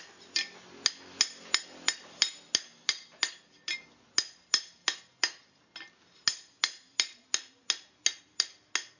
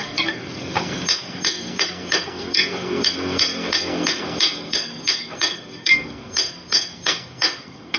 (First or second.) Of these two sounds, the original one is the first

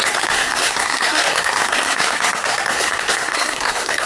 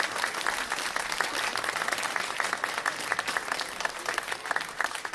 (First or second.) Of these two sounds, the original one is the second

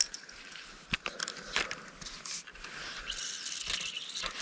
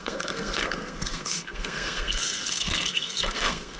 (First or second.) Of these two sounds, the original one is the first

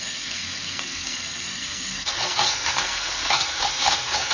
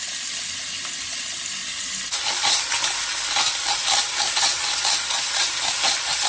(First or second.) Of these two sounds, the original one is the second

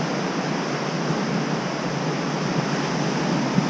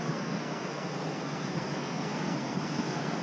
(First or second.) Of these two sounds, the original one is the first